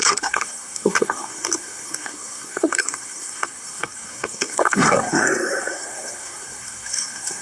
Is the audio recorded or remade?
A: remade